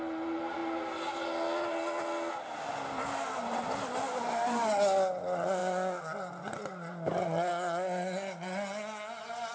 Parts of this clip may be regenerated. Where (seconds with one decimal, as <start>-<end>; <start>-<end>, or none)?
none